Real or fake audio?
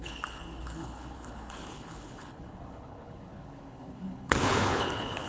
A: fake